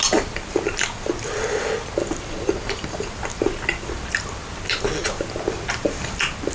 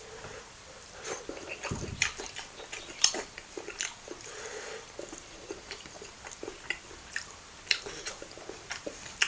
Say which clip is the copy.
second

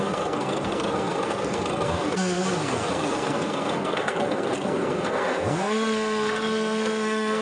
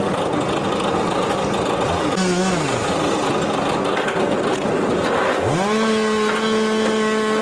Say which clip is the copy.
first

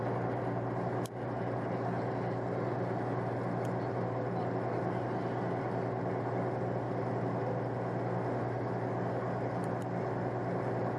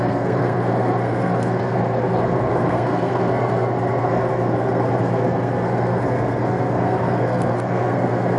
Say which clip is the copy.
second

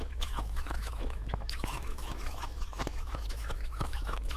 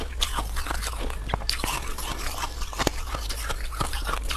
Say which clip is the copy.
first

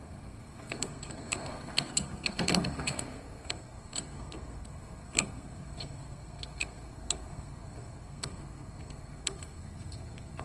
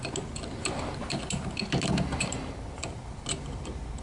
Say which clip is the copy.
first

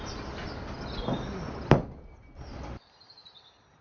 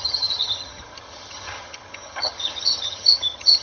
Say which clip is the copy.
second